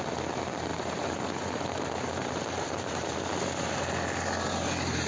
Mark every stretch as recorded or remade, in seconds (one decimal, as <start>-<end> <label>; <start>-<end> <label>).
0.0-0.7 recorded; 0.7-3.8 remade; 3.8-5.1 recorded